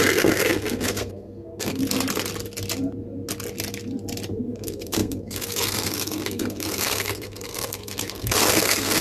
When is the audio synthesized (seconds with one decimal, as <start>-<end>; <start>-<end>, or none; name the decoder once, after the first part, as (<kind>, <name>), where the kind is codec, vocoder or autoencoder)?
0.0-1.8 (codec, SNAC); 4.4-9.0